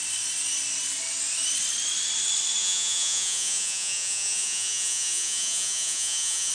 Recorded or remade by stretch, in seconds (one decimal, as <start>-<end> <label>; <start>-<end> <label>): 0.0-2.6 recorded; 2.6-6.5 remade